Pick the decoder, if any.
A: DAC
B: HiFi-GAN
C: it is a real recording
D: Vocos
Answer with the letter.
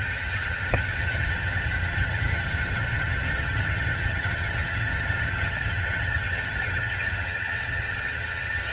B